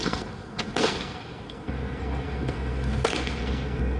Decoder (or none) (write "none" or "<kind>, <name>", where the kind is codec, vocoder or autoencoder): codec, SNAC